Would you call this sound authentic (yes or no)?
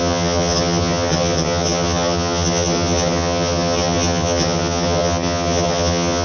no